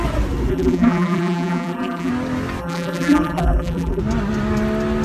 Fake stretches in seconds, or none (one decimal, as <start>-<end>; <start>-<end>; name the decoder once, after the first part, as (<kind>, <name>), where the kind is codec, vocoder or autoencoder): 0.5-2.1 (vocoder, BigVGAN v2); 2.6-4.0